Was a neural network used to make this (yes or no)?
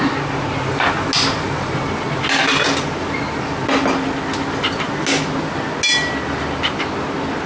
no